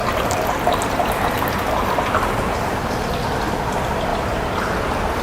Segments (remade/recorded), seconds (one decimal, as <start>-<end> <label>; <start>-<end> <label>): 0.0-3.1 remade; 3.1-4.1 recorded; 4.1-4.8 remade; 4.8-5.2 recorded